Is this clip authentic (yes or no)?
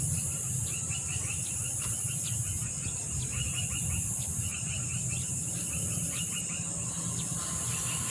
yes